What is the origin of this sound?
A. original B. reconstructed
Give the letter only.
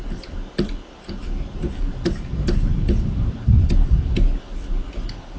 B